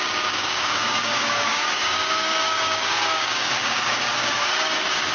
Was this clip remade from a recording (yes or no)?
yes